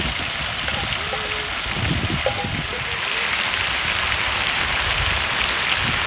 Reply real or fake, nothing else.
real